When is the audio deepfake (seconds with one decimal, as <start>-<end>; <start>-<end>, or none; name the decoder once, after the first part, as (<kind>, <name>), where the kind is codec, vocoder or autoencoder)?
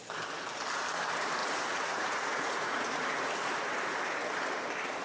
1.4-3.3 (vocoder, Vocos)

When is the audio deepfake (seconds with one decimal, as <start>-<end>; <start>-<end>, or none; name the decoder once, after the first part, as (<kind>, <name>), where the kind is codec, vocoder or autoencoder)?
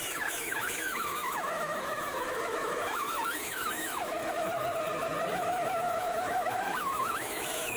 0.0-4.5 (autoencoder, DAC-VAE); 5.3-7.8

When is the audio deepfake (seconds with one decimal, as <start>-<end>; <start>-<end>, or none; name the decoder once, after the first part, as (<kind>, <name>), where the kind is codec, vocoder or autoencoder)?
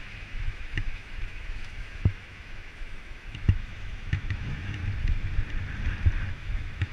0.0-4.8 (autoencoder, DAC-VAE); 6.3-6.9